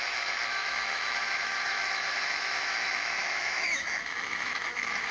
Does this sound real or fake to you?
fake